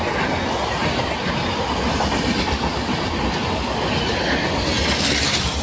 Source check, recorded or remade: recorded